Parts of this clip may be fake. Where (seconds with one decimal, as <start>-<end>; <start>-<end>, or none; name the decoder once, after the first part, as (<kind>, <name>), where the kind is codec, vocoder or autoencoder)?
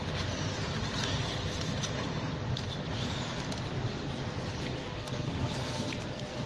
4.8-6.5 (codec, SNAC)